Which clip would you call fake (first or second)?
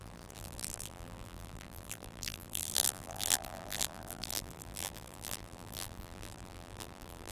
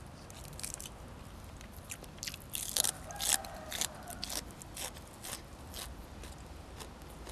first